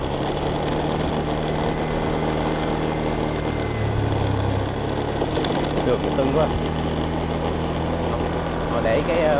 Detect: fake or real real